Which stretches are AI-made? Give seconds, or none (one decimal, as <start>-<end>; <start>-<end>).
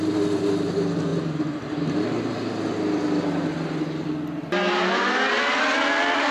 none